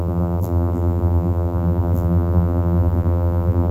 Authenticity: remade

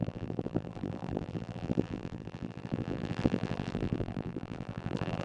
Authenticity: remade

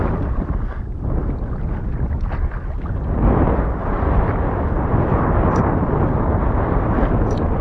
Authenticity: recorded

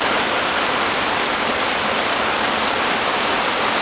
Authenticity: remade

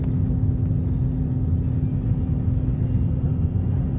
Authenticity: recorded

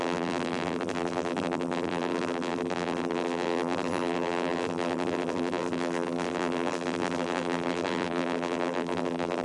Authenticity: remade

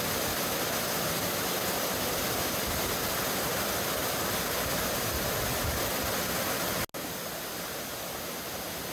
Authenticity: recorded